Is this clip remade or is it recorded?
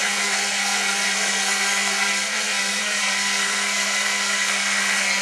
remade